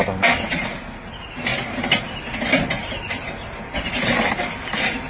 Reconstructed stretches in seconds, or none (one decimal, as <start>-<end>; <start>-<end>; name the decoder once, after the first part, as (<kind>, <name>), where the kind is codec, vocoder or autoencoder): none